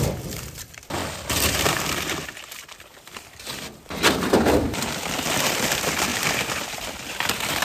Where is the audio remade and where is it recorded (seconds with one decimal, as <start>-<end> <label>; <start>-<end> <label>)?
0.0-1.0 remade; 1.0-2.3 recorded; 2.3-6.1 remade; 6.1-7.6 recorded